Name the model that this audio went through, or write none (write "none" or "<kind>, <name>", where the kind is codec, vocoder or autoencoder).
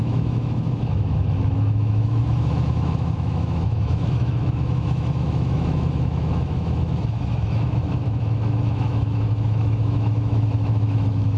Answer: autoencoder, DAC-VAE